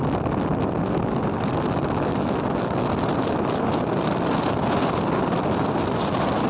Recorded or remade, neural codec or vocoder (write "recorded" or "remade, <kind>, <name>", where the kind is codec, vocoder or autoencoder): recorded